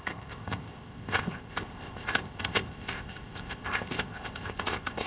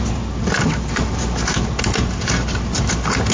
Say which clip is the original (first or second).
second